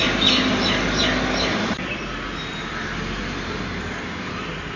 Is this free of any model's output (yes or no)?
yes